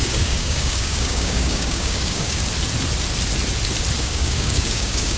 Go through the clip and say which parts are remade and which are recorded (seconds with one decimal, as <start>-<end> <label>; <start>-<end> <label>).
0.0-2.4 remade; 2.4-4.0 recorded; 4.0-5.2 remade

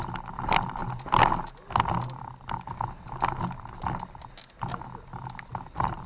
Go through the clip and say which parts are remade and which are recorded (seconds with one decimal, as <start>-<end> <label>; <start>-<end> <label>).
0.0-5.5 recorded; 5.5-6.1 remade